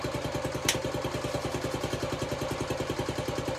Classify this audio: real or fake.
real